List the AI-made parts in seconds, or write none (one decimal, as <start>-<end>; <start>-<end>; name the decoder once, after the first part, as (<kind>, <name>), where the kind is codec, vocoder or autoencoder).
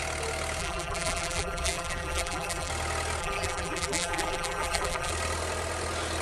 0.6-2.7 (vocoder, BigVGAN v2); 3.2-5.1